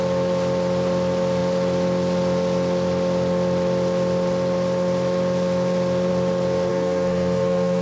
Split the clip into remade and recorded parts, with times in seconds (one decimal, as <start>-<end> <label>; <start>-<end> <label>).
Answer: 0.0-6.7 recorded; 6.7-7.8 remade